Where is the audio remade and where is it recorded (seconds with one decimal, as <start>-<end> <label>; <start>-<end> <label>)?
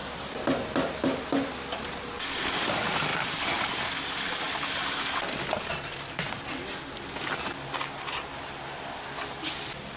0.0-10.0 recorded